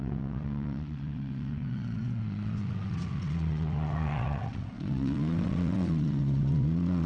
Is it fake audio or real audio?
fake